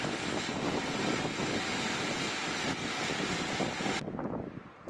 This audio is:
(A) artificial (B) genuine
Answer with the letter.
B